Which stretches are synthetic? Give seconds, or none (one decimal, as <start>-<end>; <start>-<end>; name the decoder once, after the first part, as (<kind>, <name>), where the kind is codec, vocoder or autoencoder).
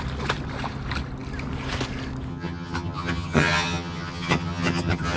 2.3-5.2 (vocoder, HiFi-GAN)